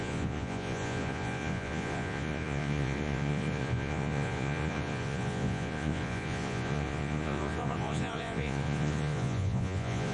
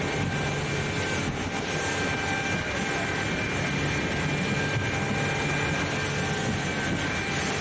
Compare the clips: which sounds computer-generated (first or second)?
first